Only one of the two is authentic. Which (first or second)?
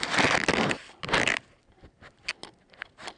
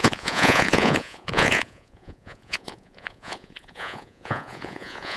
first